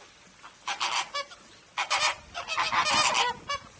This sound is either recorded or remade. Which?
recorded